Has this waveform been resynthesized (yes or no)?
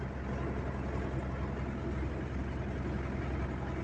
no